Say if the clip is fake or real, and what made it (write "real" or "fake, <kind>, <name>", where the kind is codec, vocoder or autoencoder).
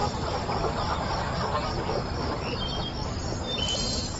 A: real